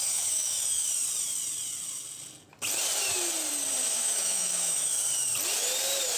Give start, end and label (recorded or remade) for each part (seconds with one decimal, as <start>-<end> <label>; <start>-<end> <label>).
0.0-0.9 remade; 0.9-3.8 recorded; 3.8-4.9 remade; 4.9-6.2 recorded